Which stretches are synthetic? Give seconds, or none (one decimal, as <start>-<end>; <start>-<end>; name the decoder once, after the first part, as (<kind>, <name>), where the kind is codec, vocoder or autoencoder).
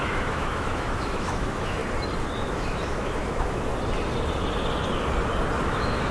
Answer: 0.0-1.8 (autoencoder, DAC-VAE); 2.4-3.7; 5.6-6.1